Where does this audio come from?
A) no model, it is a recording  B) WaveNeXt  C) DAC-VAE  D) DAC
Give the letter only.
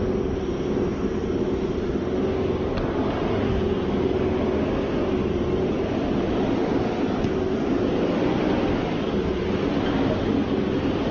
A